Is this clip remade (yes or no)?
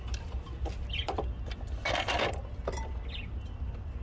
no